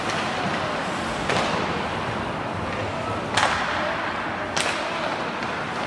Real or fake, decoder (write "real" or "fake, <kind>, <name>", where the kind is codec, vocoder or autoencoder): real